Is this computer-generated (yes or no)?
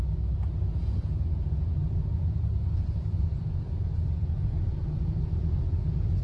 yes